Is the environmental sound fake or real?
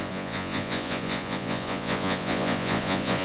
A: fake